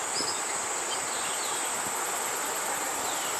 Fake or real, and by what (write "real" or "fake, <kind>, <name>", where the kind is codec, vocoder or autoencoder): real